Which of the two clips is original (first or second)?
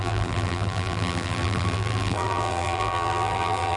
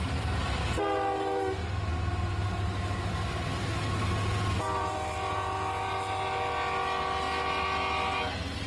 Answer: second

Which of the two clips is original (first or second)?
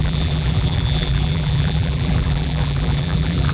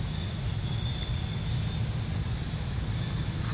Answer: second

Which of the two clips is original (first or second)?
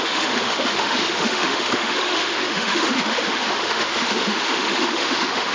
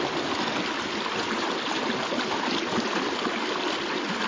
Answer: second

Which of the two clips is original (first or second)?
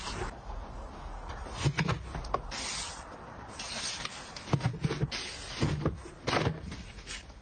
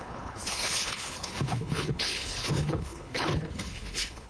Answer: first